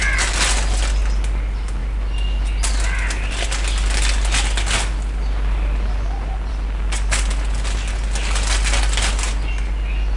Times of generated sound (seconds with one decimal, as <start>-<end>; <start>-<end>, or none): none